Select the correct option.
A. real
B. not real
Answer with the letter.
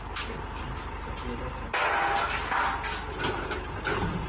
A